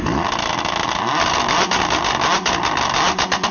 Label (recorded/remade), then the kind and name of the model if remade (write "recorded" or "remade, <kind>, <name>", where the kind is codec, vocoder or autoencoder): recorded